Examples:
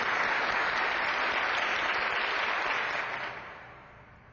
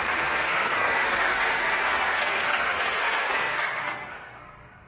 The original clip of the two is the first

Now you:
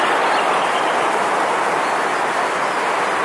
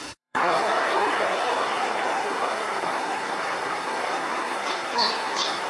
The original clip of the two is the first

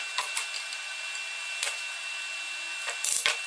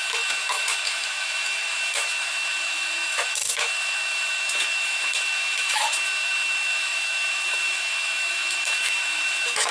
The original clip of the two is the first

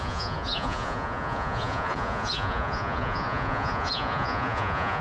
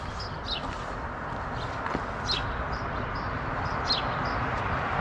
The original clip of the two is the second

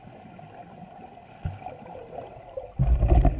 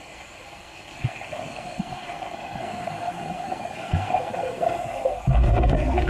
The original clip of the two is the first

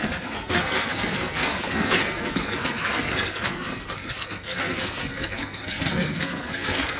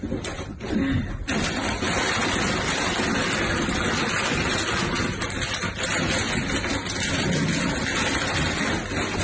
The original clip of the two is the second